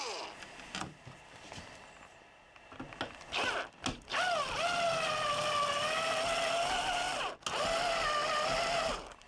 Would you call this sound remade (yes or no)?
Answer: no